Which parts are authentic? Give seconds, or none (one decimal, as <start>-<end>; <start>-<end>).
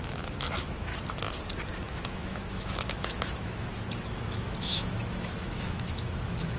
0.9-1.8